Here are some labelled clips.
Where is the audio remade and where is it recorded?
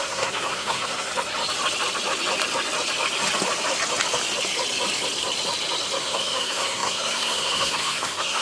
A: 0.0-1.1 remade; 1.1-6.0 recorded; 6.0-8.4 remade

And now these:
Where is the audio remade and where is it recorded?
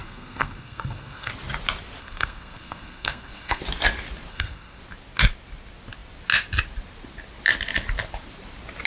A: 0.0-1.3 remade; 1.3-2.0 recorded; 2.0-3.6 remade; 3.6-4.3 recorded; 4.3-4.8 remade; 4.8-8.9 recorded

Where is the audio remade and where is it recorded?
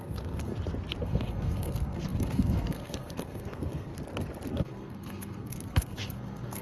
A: 0.0-0.5 remade; 0.5-1.0 recorded; 1.0-3.9 remade; 3.9-4.5 recorded; 4.5-6.6 remade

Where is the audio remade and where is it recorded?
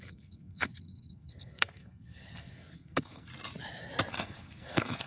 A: 0.0-3.3 remade; 3.3-4.1 recorded; 4.1-5.1 remade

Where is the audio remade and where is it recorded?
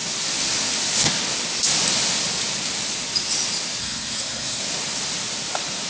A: 0.0-3.8 recorded; 3.8-4.6 remade; 4.6-5.9 recorded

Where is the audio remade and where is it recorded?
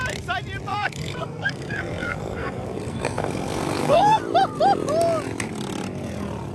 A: 0.0-0.7 recorded; 0.7-4.2 remade; 4.2-6.5 recorded